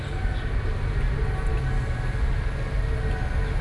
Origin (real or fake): real